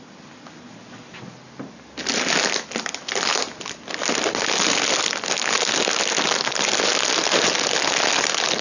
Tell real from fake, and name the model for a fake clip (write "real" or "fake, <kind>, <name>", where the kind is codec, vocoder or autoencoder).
real